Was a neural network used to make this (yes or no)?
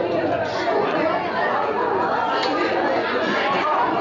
yes